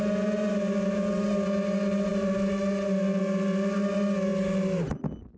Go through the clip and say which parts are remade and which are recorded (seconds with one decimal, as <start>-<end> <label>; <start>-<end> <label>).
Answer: 0.0-5.4 recorded